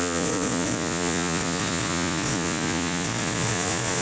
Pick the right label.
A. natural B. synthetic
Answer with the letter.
B